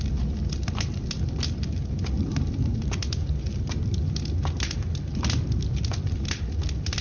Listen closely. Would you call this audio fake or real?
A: fake